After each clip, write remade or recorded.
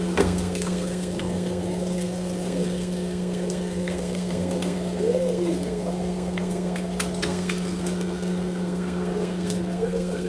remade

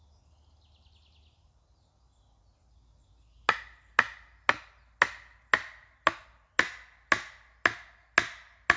recorded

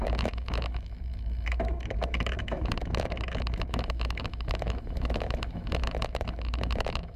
remade